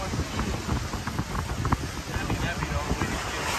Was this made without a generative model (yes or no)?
yes